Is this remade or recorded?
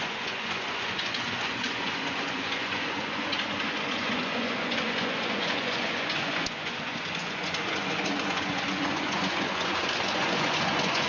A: remade